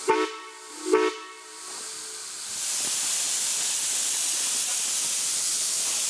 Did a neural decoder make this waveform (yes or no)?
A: no